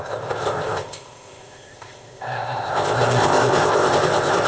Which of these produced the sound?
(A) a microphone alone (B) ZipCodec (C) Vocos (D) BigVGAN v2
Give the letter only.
B